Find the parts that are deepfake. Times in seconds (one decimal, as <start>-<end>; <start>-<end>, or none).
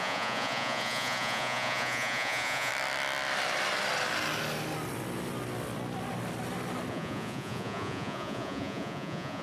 0.0-2.7; 6.9-9.4